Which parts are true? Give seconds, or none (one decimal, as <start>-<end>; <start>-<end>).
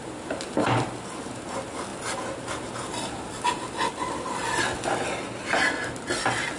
0.0-6.6